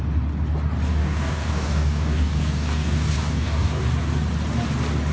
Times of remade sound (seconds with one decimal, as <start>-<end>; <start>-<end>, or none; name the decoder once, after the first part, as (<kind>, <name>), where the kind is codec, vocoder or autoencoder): 0.9-3.8 (codec, DAC)